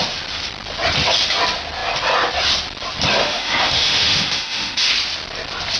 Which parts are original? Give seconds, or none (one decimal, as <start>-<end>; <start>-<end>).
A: 0.0-3.2; 4.9-5.8